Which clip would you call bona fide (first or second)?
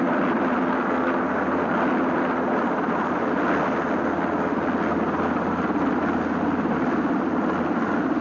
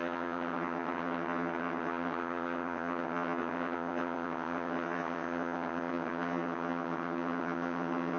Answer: first